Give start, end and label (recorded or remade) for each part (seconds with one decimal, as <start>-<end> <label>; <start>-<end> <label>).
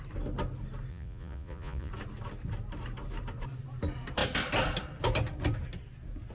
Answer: 0.0-0.9 recorded; 0.9-1.9 remade; 1.9-6.3 recorded